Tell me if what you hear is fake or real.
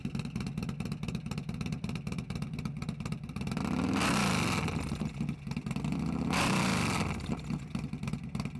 fake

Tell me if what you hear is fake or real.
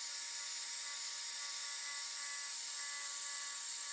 real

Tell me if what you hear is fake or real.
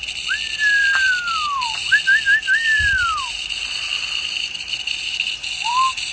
fake